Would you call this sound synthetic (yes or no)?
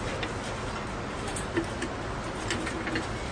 no